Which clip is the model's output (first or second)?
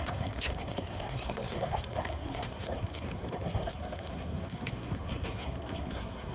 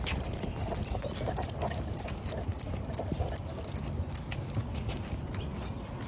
first